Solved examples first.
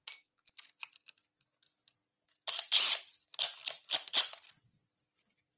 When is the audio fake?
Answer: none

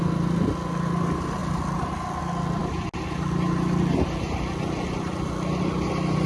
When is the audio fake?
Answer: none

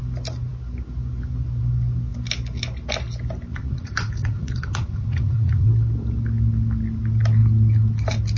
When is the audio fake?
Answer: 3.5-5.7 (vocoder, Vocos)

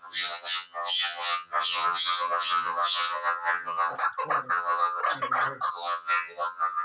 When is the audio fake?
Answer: 0.0-3.9 (vocoder, HiFi-GAN); 4.5-5.0; 5.7-6.8

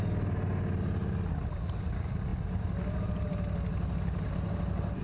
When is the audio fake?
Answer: none

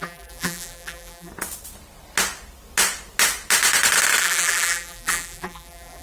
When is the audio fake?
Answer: 0.0-1.3 (vocoder, BigVGAN v2); 4.2-6.0

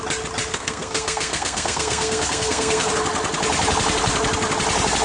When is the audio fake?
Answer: 0.5-2.9 (codec, SNAC)

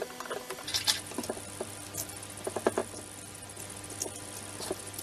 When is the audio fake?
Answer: none